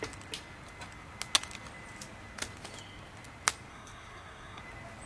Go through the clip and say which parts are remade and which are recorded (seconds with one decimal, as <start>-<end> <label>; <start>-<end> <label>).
0.0-3.7 recorded; 3.7-4.6 remade; 4.6-5.1 recorded